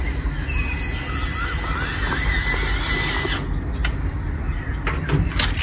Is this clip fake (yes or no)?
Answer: no